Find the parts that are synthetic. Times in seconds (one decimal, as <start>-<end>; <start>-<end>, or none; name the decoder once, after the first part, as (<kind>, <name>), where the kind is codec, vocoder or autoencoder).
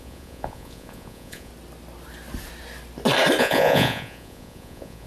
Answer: 0.0-1.5 (vocoder, Vocos); 3.4-5.1